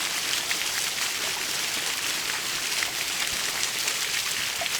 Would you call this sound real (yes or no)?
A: yes